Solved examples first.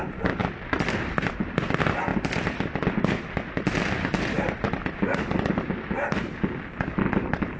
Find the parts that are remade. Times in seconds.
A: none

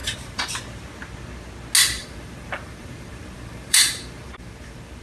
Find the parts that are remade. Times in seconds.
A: 0.0-0.5 (vocoder, BigVGAN v2); 2.0-5.0

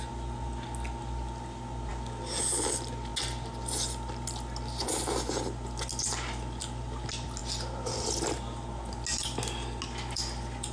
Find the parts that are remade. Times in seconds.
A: none

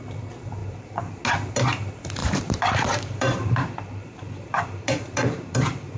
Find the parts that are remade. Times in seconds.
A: 0.6-1.2 (vocoder, BigVGAN v2); 2.2-6.0

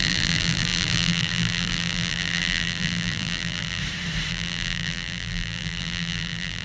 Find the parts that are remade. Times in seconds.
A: 0.0-3.8 (vocoder, BigVGAN v2); 4.3-6.6

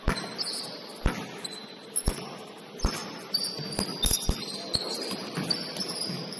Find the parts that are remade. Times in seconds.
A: none

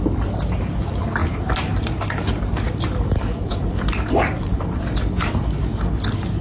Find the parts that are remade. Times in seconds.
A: 1.2-4.8 (vocoder, BigVGAN v2)

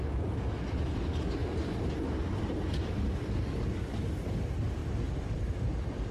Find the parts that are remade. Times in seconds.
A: 1.4-2.6 (vocoder, BigVGAN v2); 4.8-6.1